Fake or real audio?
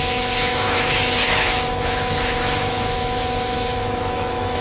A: fake